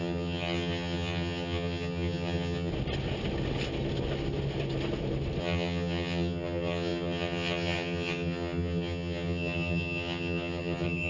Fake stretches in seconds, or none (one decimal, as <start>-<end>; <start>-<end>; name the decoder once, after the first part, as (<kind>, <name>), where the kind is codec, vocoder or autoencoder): 0.0-2.7 (vocoder, HiFi-GAN); 5.4-11.1